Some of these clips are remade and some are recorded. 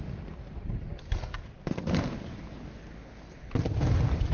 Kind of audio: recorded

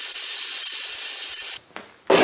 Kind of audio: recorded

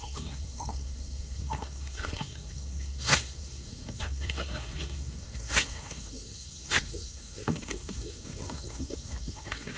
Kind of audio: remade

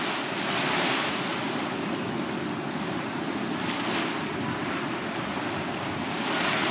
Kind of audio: recorded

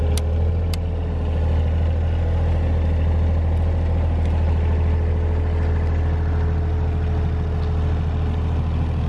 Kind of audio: recorded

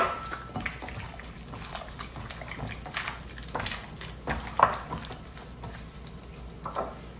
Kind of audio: recorded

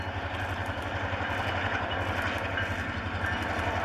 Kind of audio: recorded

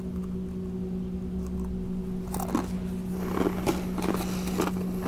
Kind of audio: recorded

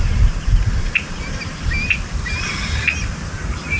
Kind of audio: recorded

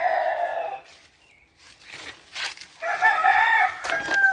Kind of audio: recorded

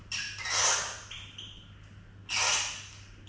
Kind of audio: recorded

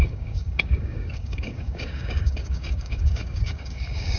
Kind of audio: remade